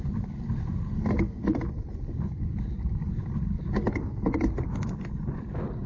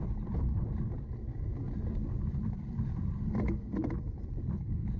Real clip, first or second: second